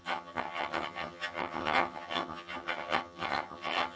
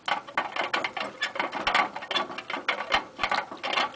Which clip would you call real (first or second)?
second